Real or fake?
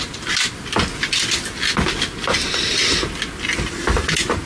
real